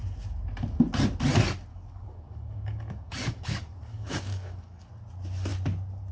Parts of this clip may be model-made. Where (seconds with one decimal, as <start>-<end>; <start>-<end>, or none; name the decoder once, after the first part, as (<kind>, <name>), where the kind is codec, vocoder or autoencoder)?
1.7-4.9 (codec, DAC)